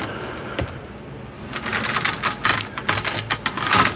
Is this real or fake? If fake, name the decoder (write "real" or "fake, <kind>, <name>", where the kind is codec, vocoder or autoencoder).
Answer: real